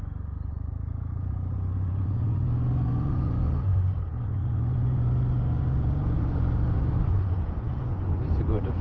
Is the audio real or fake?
fake